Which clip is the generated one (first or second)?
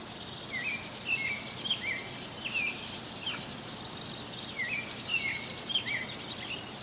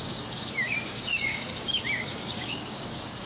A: second